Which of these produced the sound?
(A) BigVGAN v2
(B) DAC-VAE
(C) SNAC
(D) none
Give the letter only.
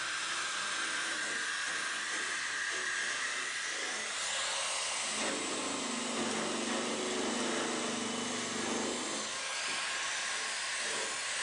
D